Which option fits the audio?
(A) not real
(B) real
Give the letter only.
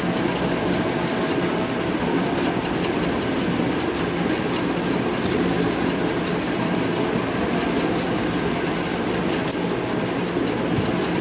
B